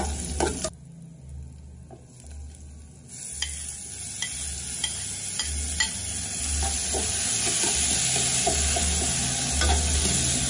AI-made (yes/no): no